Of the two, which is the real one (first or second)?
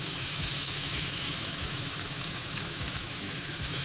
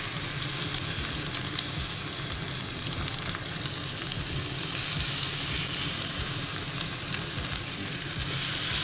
second